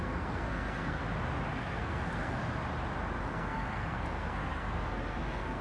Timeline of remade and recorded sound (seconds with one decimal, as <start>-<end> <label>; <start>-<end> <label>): 0.0-1.0 remade; 1.0-1.6 recorded; 1.6-2.4 remade; 2.4-3.3 recorded; 3.3-5.6 remade